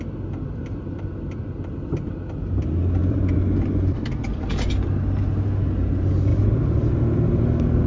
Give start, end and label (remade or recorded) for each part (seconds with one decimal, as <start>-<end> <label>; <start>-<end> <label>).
0.0-3.0 recorded; 3.0-4.2 remade; 4.2-6.3 recorded; 6.3-6.9 remade; 6.9-7.9 recorded